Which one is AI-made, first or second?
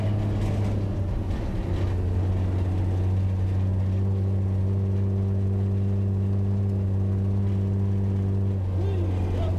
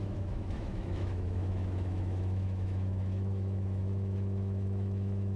second